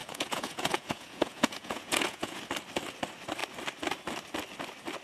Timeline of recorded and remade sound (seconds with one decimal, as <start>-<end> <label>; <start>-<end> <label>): 0.0-2.4 remade; 2.4-5.0 recorded